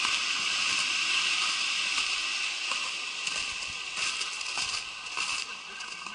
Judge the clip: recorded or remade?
recorded